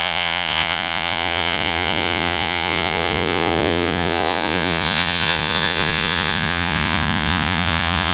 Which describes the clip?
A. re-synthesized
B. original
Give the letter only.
A